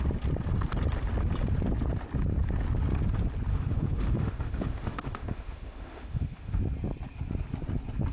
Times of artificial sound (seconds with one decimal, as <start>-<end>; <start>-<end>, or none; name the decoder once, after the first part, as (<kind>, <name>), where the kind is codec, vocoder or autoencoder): 3.5-6.6 (autoencoder, DAC-VAE)